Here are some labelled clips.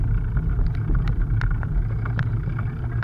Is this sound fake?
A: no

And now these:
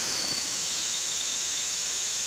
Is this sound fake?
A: yes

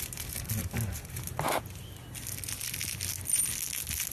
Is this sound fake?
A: no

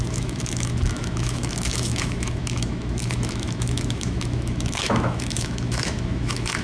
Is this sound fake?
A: yes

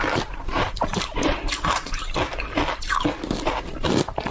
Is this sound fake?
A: no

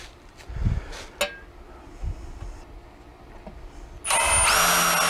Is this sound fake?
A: no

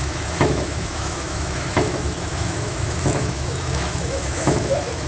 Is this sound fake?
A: yes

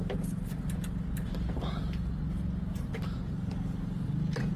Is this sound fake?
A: no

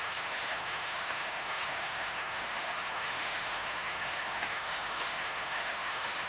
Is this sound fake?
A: yes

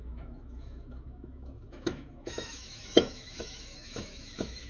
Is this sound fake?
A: yes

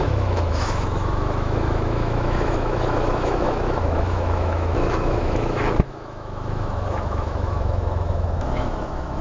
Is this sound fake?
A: yes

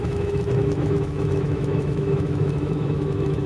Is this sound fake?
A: yes